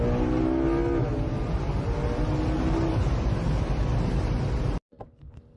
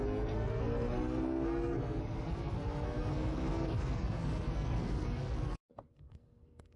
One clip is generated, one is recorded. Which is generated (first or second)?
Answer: second